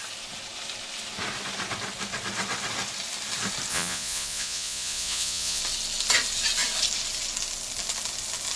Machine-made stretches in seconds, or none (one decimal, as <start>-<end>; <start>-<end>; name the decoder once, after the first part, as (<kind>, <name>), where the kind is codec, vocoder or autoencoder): 3.7-5.6 (vocoder, Vocos)